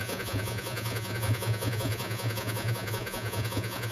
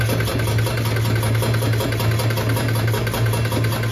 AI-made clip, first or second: first